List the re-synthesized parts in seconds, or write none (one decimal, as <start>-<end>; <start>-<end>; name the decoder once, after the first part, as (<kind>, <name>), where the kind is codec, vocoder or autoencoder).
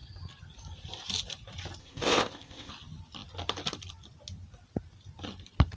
1.8-2.7 (codec, ZipCodec)